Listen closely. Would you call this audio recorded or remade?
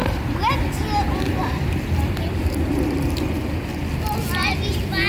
recorded